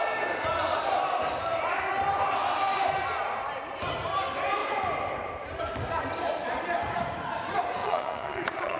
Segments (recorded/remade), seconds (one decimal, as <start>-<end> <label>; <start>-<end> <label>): 0.0-7.8 recorded; 7.8-8.8 remade